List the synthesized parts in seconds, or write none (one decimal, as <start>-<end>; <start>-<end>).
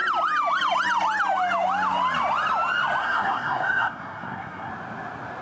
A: 3.0-4.7